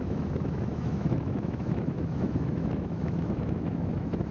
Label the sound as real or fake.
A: fake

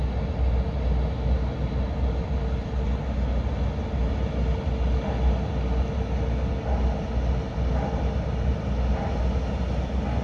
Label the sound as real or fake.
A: real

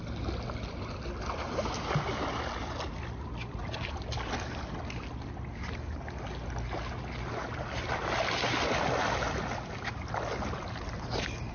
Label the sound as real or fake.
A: real